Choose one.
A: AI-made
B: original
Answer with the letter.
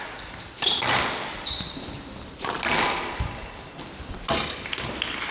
B